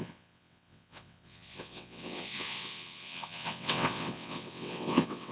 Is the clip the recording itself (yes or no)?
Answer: no